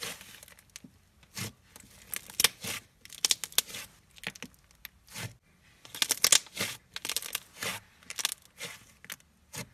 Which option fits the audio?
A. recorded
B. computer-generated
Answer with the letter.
A